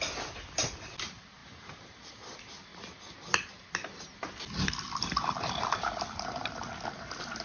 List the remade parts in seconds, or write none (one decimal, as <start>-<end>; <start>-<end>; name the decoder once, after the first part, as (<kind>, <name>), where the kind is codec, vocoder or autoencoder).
0.0-2.7 (vocoder, BigVGAN v2); 5.6-7.4